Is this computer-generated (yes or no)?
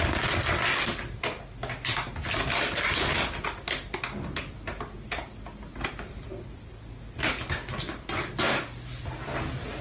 no